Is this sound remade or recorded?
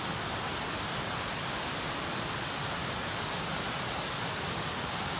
recorded